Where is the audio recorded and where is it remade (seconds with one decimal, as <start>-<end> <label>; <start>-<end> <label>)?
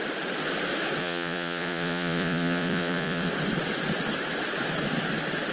0.0-1.0 recorded; 1.0-3.3 remade; 3.3-5.5 recorded